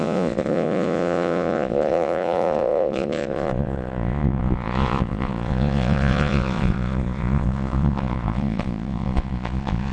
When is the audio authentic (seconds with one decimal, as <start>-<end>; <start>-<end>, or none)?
none